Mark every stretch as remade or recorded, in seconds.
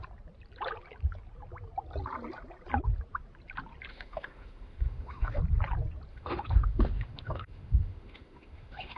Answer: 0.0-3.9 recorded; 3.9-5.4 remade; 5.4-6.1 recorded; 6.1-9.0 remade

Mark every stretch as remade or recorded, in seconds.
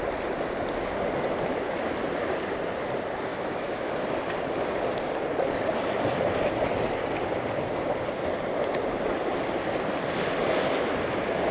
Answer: 0.0-3.3 recorded; 3.3-3.9 remade; 3.9-11.5 recorded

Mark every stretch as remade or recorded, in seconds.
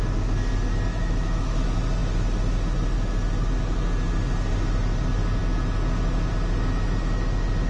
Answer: 0.0-0.9 recorded; 0.9-1.6 remade; 1.6-7.7 recorded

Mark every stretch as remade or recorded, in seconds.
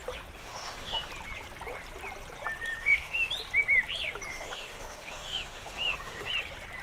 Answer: 0.0-0.4 recorded; 0.4-1.1 remade; 1.1-2.8 recorded; 2.8-3.3 remade; 3.3-4.3 recorded; 4.3-6.3 remade; 6.3-6.8 recorded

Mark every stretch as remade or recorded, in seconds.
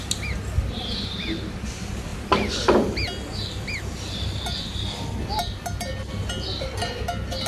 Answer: 0.0-7.5 recorded